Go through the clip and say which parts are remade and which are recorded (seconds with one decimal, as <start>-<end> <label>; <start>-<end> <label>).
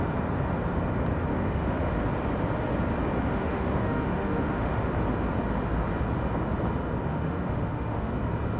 0.0-1.3 recorded; 1.3-2.0 remade; 2.0-3.3 recorded; 3.3-4.9 remade; 4.9-7.1 recorded; 7.1-8.1 remade; 8.1-8.6 recorded